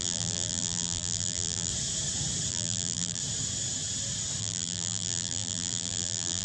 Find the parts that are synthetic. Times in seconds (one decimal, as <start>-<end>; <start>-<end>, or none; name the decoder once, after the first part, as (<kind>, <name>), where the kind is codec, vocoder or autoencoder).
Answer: 0.0-1.7 (vocoder, BigVGAN v2); 2.5-3.2; 4.4-6.4